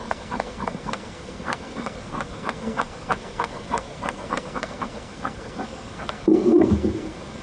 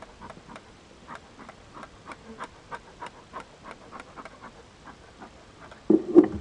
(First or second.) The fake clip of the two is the first